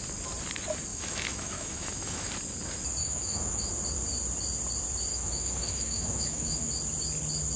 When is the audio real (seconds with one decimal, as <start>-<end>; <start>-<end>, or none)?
0.0-0.9; 2.3-3.0; 3.7-5.1; 6.7-7.6